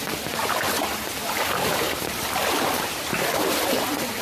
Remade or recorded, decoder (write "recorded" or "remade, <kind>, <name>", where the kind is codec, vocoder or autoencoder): remade, vocoder, BigVGAN v2